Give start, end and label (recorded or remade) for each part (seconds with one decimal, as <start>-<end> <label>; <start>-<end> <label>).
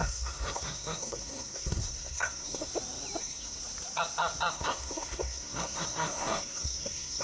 0.0-2.7 remade; 2.7-3.2 recorded; 3.2-3.6 remade; 3.6-4.5 recorded; 4.5-7.2 remade